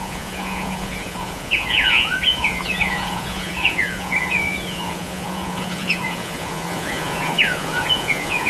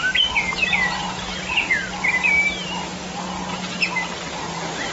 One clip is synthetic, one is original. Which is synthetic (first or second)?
first